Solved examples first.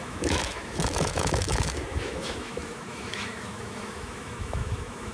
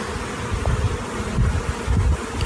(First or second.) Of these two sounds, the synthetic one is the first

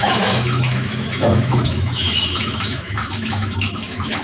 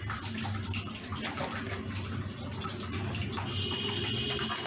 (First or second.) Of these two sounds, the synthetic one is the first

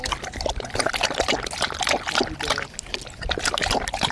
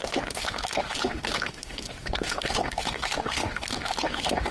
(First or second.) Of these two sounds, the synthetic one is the second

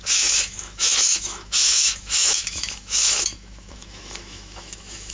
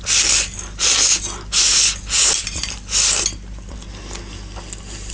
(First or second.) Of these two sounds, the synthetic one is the first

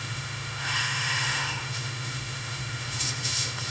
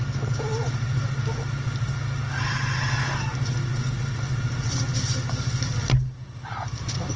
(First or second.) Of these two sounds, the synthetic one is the first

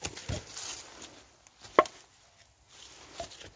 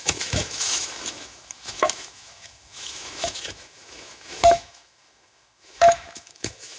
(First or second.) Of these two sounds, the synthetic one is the second